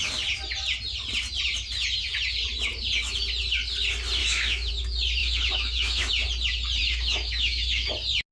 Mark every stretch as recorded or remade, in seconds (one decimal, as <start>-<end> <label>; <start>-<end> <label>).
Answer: 0.0-4.2 recorded; 4.2-4.7 remade; 4.7-5.2 recorded; 5.2-6.1 remade; 6.1-6.8 recorded; 6.8-7.9 remade; 7.9-8.3 recorded